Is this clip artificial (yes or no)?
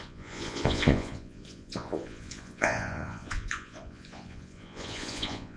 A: yes